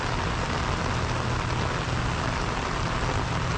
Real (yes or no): yes